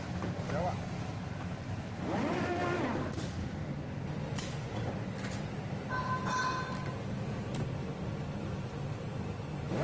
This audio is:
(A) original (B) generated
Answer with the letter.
A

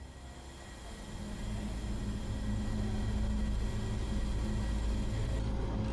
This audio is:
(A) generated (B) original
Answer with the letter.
B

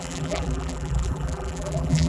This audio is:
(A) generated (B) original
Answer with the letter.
A